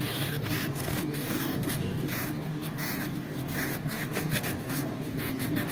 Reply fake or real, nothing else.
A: fake